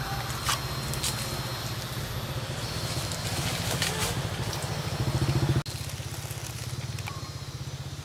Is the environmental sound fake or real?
real